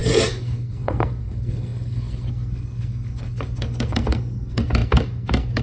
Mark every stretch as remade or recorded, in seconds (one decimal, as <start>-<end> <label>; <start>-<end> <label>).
0.0-5.6 remade

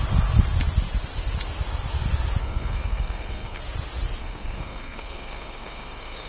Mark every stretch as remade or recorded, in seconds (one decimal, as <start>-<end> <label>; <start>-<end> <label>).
0.0-2.4 recorded; 2.4-3.6 remade; 3.6-4.2 recorded; 4.2-6.3 remade